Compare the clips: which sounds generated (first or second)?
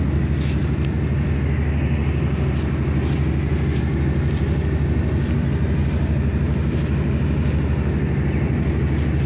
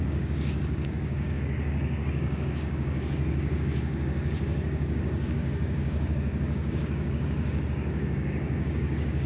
second